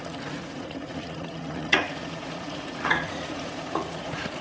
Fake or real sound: fake